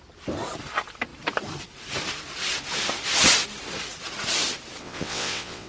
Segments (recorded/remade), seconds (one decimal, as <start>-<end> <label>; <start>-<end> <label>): 0.0-4.8 recorded; 4.8-5.7 remade